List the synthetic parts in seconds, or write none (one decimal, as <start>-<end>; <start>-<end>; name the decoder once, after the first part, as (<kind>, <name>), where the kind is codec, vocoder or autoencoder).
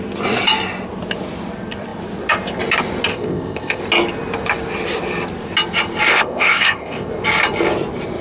3.1-3.8 (codec, ZipCodec); 6.1-7.1